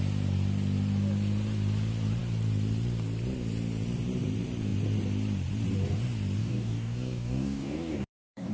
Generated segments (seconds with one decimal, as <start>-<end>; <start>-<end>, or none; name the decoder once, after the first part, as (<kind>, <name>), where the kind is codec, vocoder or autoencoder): 6.4-8.5 (codec, DAC)